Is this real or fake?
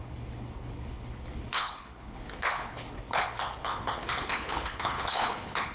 fake